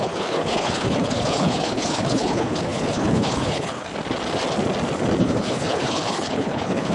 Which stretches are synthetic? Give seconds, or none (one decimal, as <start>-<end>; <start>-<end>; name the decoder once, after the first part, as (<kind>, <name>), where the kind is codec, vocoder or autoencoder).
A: 0.0-3.9 (codec, HILCodec); 5.2-6.9